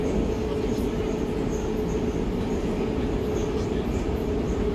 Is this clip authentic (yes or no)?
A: yes